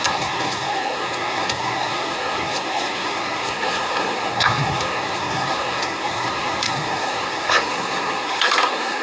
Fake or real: fake